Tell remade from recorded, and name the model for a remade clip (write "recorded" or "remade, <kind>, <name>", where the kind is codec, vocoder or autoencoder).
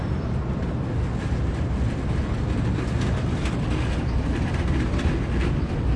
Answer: recorded